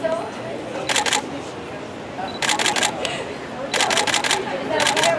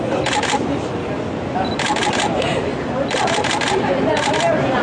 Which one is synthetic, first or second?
second